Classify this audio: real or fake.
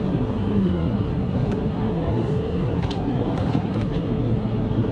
fake